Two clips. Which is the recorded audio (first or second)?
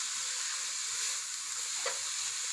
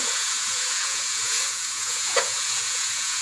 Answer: first